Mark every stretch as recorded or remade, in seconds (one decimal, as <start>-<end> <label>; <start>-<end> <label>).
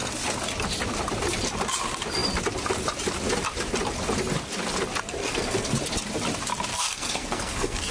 0.0-5.2 recorded; 5.2-5.7 remade; 5.7-6.7 recorded; 6.7-7.9 remade